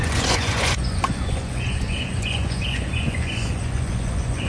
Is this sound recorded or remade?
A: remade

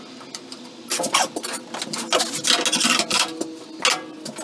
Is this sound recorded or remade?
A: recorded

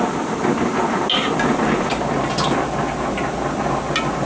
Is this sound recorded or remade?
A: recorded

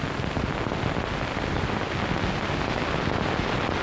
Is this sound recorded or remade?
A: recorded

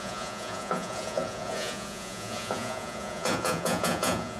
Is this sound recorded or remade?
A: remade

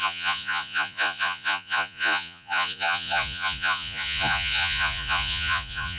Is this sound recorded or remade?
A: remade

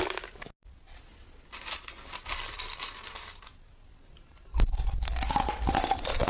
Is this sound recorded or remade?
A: recorded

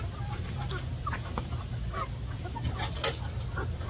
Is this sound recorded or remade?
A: recorded